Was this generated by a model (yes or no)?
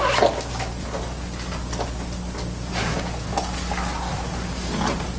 no